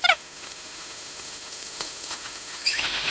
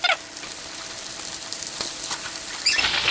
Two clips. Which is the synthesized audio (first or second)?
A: first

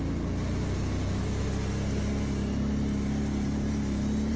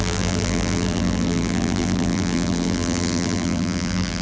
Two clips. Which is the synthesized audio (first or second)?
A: second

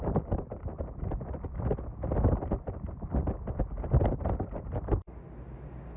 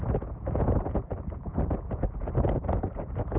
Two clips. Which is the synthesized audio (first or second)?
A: second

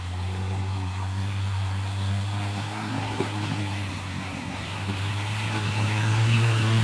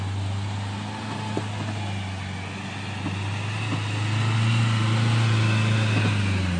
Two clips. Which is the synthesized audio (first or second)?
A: first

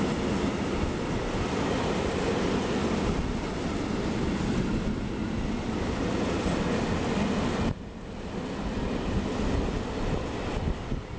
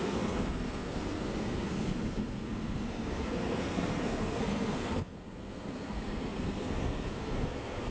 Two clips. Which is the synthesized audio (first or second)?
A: second